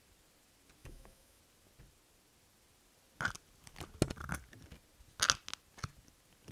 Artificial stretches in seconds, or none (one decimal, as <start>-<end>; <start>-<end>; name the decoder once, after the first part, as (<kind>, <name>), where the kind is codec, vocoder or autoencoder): 0.8-1.4 (autoencoder, DAC-VAE)